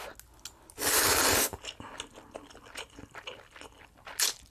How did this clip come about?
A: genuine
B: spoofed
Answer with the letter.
A